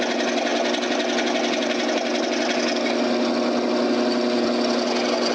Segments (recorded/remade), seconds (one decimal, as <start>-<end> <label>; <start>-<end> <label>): 0.0-5.3 recorded